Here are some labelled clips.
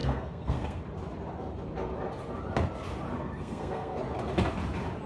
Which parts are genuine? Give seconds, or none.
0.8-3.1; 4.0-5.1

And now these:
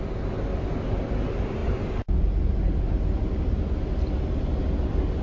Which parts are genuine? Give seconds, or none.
0.0-5.2

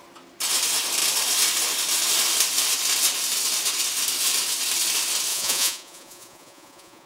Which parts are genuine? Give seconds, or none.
0.0-5.3

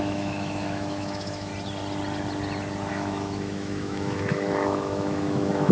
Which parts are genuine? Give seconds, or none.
1.5-2.9

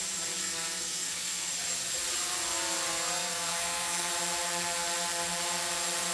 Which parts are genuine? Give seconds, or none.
0.0-0.4; 1.5-2.9; 4.1-6.1

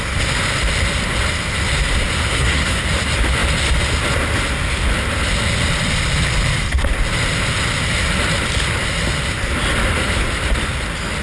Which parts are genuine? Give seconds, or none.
0.0-2.3; 2.8-11.2